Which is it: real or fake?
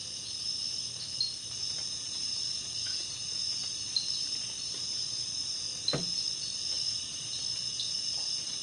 real